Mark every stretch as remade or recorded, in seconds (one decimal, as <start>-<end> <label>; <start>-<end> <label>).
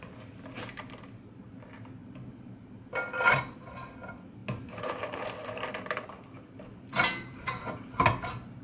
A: 0.0-2.0 remade; 2.0-3.3 recorded; 3.3-8.6 remade